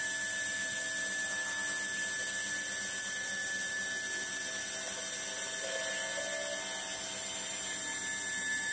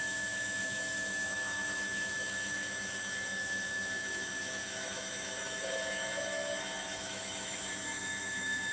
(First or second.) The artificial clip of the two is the second